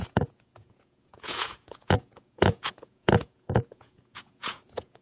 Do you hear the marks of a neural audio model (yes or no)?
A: yes